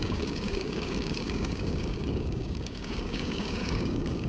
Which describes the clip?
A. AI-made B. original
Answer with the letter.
A